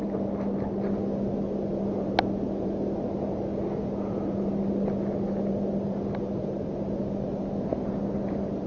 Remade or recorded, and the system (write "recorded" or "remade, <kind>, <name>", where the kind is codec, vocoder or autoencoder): recorded